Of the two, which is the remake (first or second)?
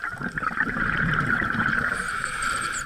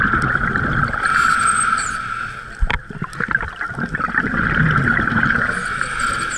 first